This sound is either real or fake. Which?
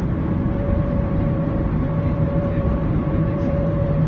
fake